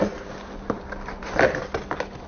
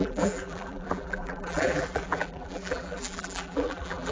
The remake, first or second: second